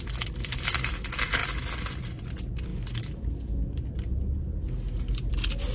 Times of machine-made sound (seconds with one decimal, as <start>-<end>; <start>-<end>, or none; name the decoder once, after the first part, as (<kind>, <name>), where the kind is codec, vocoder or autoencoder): none